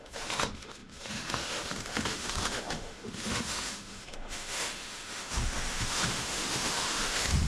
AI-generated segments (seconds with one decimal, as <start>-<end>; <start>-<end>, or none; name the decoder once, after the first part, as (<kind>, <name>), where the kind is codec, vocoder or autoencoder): 0.0-7.5 (autoencoder, DAC-VAE)